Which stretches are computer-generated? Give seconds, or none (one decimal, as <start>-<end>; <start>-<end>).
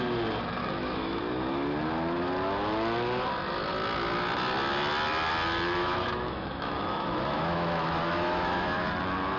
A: 0.6-1.2; 5.8-9.0